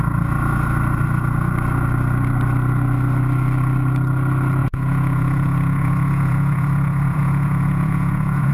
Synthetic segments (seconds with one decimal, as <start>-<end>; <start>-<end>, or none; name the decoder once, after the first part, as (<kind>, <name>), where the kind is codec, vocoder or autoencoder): 4.6-8.5 (vocoder, Vocos)